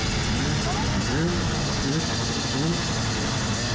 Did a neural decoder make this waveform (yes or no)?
no